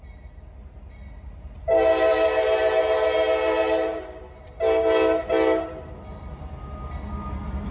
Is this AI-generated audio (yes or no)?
no